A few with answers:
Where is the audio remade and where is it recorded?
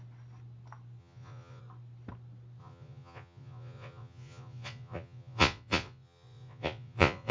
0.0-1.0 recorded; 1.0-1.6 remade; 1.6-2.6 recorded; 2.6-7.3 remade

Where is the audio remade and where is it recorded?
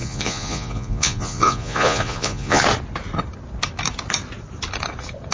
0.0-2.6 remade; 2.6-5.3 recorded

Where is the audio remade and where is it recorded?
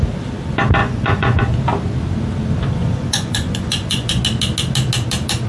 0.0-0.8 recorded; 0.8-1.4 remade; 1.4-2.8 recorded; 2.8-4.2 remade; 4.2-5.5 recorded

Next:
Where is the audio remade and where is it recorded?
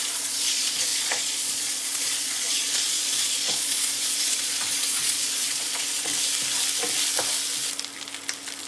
0.0-6.1 remade; 6.1-8.7 recorded